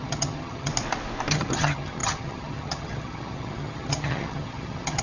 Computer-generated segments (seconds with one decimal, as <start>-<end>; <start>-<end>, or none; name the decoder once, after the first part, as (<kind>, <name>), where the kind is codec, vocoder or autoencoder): 0.0-0.7 (vocoder, HiFi-GAN); 1.3-5.0